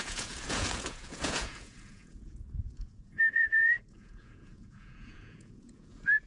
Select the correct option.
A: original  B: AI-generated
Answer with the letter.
B